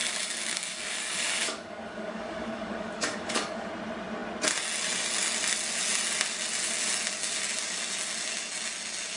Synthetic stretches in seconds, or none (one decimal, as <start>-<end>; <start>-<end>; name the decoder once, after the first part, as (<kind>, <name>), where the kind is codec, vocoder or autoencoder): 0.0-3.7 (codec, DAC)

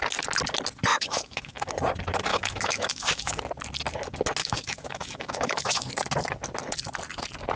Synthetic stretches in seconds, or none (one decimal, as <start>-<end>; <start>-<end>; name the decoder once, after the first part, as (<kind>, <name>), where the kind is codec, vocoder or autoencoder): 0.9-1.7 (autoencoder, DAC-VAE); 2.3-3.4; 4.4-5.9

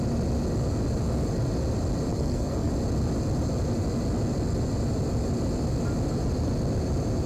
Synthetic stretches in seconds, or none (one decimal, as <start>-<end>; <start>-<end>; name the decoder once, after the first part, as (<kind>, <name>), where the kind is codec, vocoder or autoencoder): 2.1-2.7 (codec, SNAC)